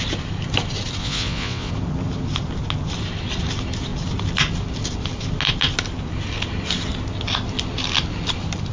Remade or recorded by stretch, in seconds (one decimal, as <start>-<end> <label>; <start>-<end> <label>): 0.0-1.0 recorded; 1.0-1.7 remade; 1.7-8.7 recorded